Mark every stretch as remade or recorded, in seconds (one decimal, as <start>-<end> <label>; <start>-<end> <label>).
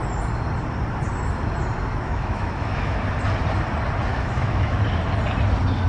0.0-1.9 recorded; 1.9-3.0 remade; 3.0-4.1 recorded; 4.1-4.8 remade; 4.8-5.9 recorded